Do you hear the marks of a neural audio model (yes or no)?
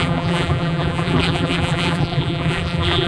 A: yes